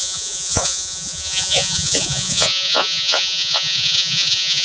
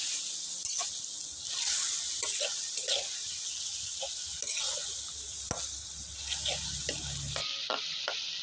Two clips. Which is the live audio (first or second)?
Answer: second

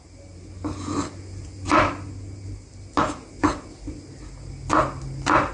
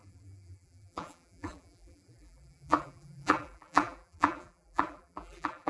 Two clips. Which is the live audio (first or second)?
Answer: first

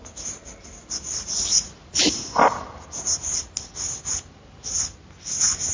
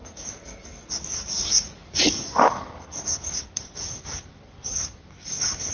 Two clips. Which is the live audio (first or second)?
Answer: first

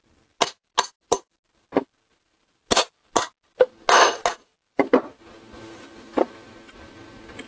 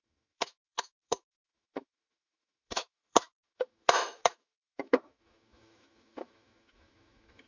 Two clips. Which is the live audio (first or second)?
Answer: first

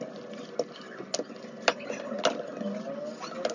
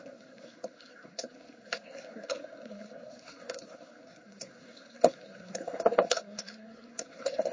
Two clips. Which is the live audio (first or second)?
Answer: first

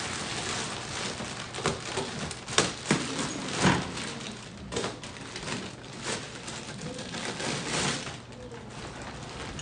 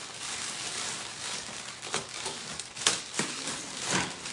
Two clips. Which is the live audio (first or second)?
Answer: first